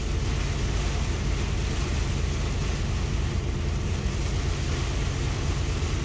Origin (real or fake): real